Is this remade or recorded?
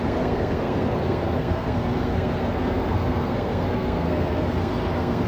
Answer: remade